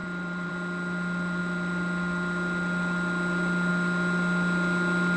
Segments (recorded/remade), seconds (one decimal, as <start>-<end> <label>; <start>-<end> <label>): 0.0-0.5 remade; 0.5-5.2 recorded

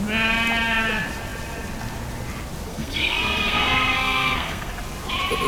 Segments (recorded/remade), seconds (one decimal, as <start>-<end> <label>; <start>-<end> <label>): 0.0-2.7 recorded; 2.7-4.7 remade; 4.7-5.5 recorded

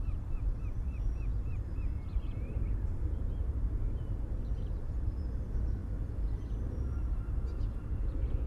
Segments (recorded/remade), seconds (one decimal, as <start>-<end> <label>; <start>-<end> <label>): 0.0-5.8 remade; 5.8-7.8 recorded; 7.8-8.5 remade